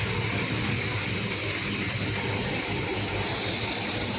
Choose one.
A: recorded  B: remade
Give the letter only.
A